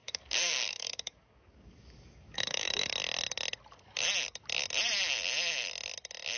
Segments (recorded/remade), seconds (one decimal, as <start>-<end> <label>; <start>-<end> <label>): 0.0-2.9 remade; 2.9-6.4 recorded